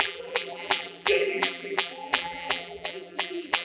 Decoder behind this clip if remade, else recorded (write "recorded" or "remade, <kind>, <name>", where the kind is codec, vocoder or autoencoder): remade, vocoder, BigVGAN v2